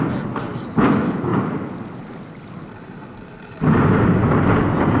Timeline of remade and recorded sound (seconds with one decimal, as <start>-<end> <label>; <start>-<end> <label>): 0.0-5.0 recorded